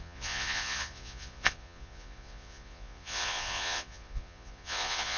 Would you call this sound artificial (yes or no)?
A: yes